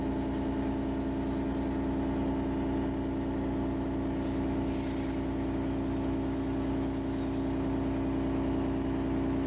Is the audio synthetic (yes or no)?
no